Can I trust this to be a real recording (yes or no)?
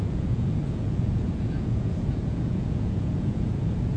no